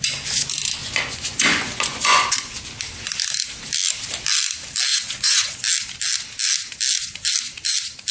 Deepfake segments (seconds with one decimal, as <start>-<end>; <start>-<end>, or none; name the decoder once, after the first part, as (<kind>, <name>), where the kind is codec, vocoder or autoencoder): 0.8-2.6 (vocoder, Vocos); 4.9-5.5